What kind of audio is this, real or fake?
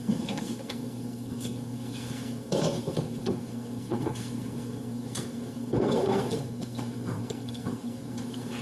fake